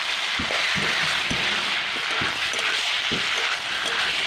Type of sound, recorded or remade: recorded